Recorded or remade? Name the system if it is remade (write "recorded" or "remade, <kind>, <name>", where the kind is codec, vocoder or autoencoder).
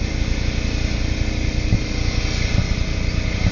recorded